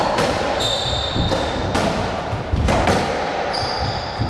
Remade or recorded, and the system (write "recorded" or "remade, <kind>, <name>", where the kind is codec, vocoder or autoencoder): remade, vocoder, BigVGAN v2